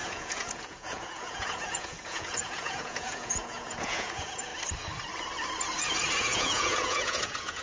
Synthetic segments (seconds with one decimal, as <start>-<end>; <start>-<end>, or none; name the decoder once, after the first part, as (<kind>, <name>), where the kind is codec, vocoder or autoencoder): 0.0-4.5 (vocoder, Vocos); 6.2-7.6

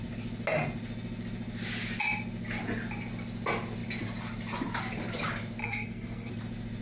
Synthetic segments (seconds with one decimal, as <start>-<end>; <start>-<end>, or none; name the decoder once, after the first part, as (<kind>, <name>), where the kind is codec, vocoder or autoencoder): 5.6-6.3 (codec, SNAC)

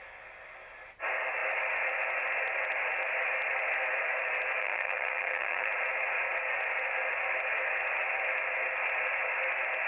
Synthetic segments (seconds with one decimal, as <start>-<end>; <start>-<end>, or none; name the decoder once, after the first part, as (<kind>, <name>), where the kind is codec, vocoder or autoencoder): 4.6-5.7 (vocoder, HiFi-GAN)

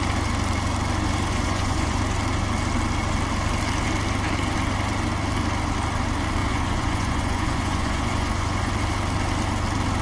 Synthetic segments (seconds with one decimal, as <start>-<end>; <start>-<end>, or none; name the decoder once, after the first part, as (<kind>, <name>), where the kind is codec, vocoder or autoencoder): 1.3-2.0 (vocoder, Vocos); 6.4-8.7

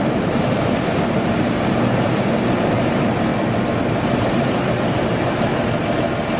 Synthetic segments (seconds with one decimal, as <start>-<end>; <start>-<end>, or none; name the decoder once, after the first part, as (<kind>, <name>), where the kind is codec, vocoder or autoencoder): 0.0-3.3 (vocoder, BigVGAN v2); 3.8-5.5

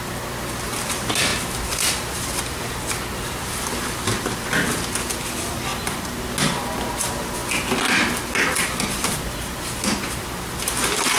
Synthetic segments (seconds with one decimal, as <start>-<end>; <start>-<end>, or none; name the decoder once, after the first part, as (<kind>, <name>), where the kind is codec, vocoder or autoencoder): none

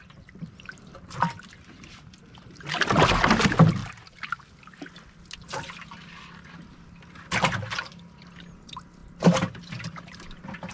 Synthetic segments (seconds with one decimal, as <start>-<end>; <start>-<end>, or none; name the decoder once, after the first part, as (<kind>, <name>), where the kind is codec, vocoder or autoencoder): none